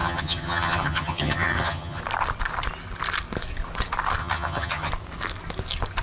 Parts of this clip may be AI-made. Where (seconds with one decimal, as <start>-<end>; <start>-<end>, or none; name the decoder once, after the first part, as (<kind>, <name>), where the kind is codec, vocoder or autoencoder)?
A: 0.0-2.0 (vocoder, HiFi-GAN); 4.2-4.9